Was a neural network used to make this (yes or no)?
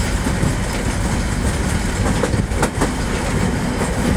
no